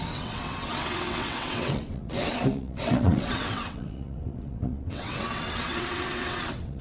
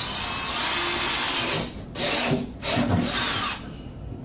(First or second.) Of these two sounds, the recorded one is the second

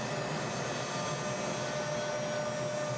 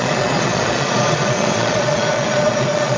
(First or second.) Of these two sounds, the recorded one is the first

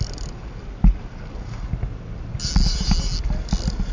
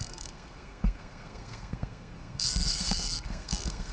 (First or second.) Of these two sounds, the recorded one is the first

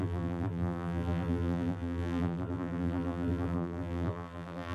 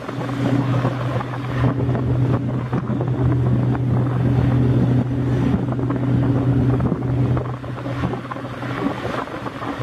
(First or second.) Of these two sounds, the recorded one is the second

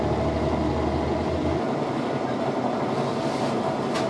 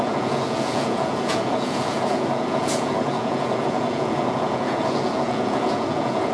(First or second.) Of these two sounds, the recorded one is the first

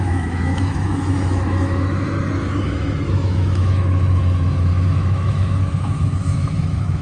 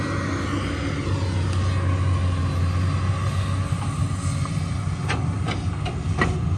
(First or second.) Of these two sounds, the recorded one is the second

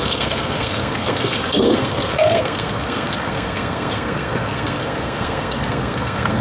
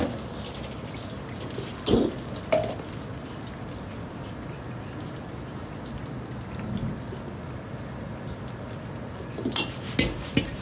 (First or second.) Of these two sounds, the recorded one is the second